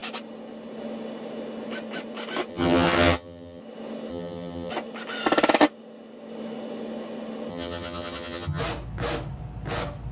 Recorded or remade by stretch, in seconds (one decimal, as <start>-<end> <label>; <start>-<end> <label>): 0.0-2.5 recorded; 2.5-3.6 remade; 3.6-4.1 recorded; 4.1-4.7 remade; 4.7-7.5 recorded; 7.5-8.6 remade; 8.6-10.1 recorded